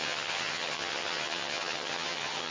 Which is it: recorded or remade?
remade